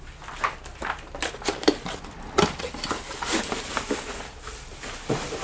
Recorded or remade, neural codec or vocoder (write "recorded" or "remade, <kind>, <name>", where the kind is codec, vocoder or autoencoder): recorded